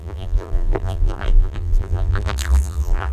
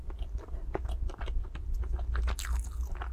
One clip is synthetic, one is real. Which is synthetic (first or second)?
first